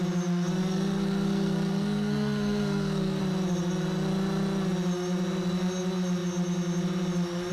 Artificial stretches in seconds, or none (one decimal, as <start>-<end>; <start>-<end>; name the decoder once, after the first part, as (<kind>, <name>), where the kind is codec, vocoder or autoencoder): 0.6-3.2 (codec, SNAC)